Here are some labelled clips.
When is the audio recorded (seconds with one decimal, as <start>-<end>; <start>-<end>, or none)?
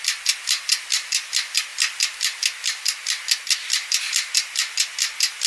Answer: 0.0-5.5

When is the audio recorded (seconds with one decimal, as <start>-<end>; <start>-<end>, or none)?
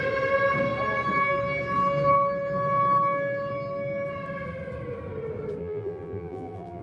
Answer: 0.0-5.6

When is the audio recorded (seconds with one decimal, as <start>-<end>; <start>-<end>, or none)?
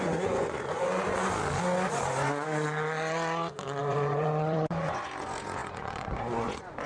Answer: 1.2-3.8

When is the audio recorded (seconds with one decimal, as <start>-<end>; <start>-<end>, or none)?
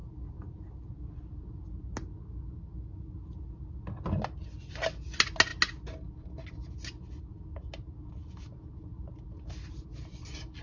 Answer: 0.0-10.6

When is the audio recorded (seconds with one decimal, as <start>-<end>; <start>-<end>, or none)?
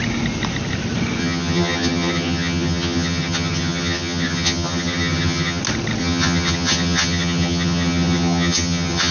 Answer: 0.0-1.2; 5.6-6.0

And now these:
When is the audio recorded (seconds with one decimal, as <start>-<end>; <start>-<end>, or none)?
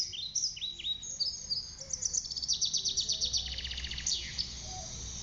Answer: 0.0-5.2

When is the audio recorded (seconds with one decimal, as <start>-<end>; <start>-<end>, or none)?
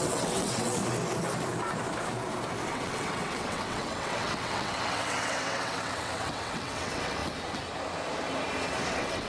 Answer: 0.8-2.7; 7.2-8.9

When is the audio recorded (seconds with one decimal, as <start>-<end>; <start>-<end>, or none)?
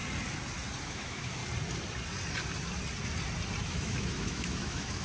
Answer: 0.0-0.8; 1.4-3.6